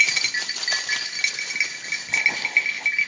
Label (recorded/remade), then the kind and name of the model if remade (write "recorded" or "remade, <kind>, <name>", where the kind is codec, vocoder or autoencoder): recorded